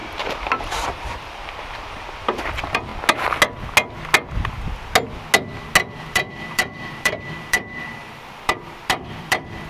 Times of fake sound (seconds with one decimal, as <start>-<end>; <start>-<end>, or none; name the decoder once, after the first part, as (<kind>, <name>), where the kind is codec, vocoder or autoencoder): 0.6-2.9 (vocoder, BigVGAN v2); 6.0-9.7